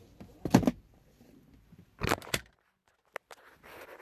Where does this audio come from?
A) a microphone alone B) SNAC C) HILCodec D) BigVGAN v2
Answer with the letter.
A